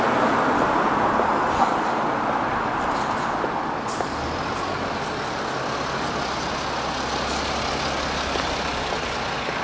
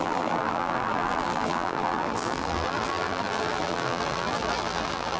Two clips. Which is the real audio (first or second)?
first